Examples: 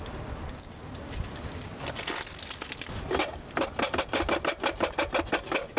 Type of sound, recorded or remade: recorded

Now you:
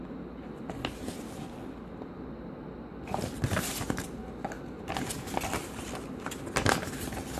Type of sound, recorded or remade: recorded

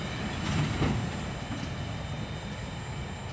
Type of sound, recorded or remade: recorded